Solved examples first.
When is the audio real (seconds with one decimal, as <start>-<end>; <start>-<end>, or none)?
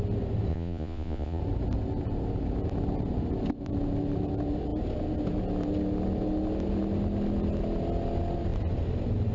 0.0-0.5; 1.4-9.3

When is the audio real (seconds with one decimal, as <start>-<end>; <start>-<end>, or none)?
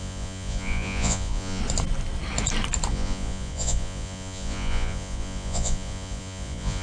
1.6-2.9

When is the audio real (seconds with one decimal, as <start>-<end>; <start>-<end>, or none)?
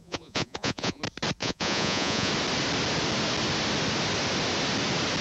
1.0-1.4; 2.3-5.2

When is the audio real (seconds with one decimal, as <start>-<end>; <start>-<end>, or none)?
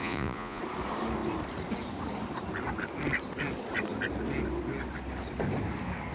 0.6-6.1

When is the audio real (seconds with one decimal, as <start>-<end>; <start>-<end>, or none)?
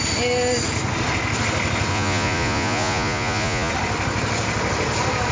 0.0-1.9; 3.7-5.3